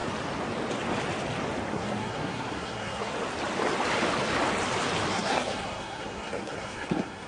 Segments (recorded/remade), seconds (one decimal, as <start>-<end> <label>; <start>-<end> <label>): 0.0-1.7 recorded; 1.7-3.1 remade; 3.1-5.1 recorded; 5.1-7.3 remade